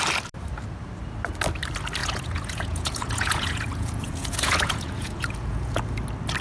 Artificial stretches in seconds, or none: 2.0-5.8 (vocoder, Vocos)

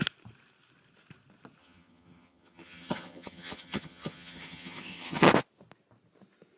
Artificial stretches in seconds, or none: 1.6-5.3 (vocoder, HiFi-GAN)

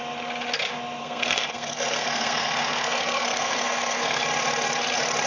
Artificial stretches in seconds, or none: 1.0-4.2 (codec, SNAC)

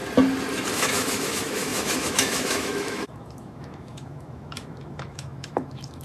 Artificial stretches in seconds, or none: 0.7-6.0 (autoencoder, DAC-VAE)

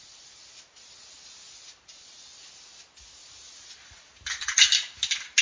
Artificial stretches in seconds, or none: none